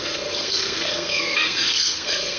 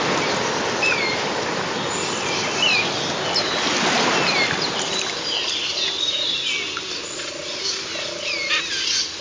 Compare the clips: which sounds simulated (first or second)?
first